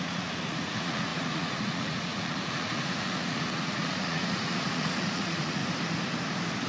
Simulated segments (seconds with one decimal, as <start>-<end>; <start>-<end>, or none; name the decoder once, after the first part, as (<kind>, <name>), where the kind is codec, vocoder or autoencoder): 0.0-5.6 (vocoder, Vocos)